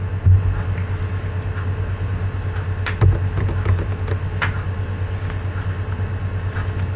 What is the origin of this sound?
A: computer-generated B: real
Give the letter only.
B